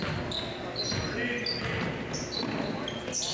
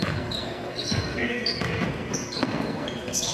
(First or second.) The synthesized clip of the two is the second